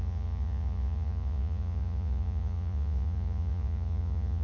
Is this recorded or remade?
remade